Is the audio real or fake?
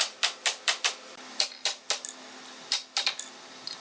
real